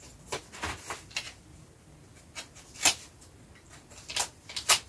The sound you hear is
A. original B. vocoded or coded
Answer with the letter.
A